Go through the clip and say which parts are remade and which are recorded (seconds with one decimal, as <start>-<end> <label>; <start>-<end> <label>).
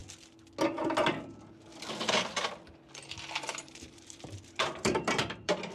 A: 0.0-3.4 recorded; 3.4-5.7 remade